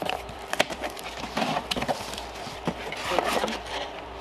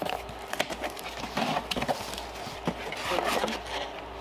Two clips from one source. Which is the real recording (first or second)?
second